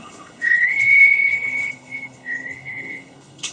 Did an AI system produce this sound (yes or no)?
yes